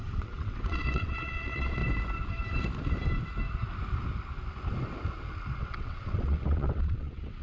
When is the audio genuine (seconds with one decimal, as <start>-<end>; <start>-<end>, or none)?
1.8-5.6